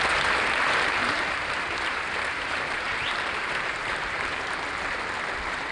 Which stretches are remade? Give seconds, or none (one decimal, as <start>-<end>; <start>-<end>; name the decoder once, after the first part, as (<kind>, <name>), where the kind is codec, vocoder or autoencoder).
1.0-4.4 (vocoder, BigVGAN v2)